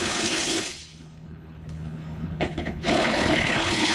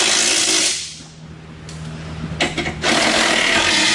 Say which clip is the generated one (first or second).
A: first